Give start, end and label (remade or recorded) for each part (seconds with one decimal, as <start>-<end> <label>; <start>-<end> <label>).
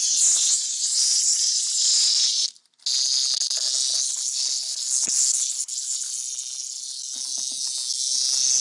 0.0-3.9 recorded; 3.9-6.1 remade; 6.1-8.6 recorded